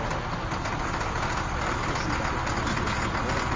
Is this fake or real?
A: real